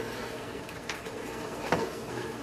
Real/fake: fake